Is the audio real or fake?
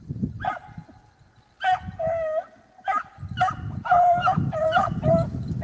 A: real